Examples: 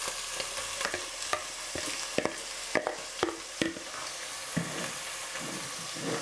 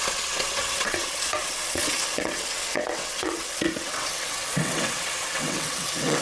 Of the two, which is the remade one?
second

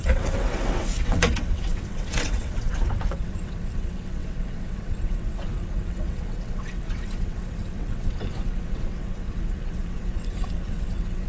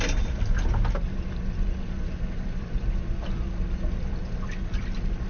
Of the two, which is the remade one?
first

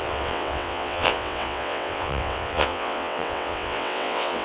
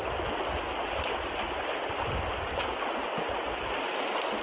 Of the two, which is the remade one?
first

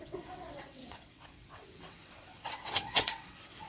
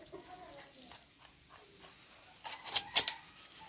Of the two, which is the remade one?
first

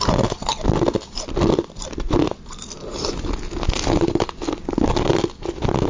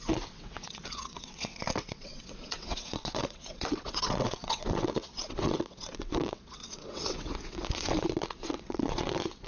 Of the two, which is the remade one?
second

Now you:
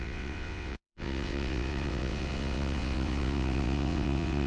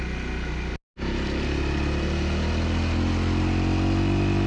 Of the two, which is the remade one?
first